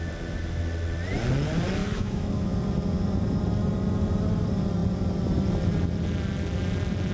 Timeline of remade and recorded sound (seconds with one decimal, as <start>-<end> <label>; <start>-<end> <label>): 0.0-1.8 recorded; 1.8-2.5 remade; 2.5-7.1 recorded